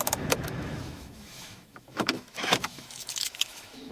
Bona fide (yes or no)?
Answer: no